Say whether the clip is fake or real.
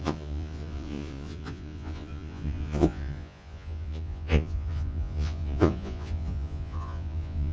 fake